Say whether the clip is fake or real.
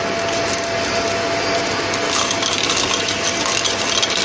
real